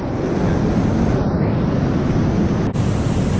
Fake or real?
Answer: real